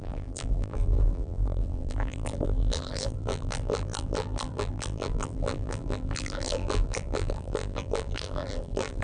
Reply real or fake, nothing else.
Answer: fake